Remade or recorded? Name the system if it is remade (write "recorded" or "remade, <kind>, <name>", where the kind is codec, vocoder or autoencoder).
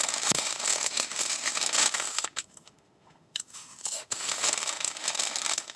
remade, autoencoder, DAC-VAE